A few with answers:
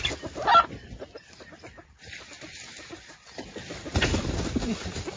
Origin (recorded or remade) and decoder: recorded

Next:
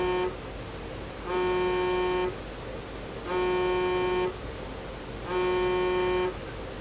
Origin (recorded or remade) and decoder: recorded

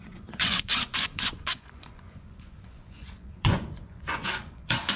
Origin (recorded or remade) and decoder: remade, vocoder, Vocos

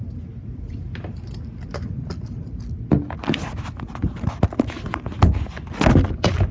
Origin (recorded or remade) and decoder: recorded